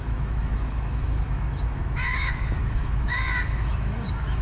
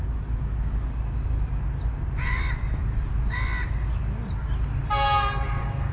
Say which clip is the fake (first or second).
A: first